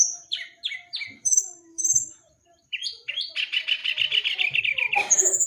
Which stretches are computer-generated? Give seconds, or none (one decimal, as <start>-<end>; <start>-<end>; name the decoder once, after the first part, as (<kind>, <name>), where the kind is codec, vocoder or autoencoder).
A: 0.0-3.1 (vocoder, BigVGAN v2)